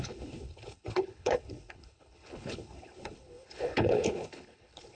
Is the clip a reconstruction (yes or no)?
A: yes